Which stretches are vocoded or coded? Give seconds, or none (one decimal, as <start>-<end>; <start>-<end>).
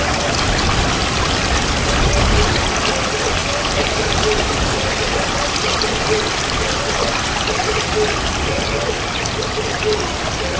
none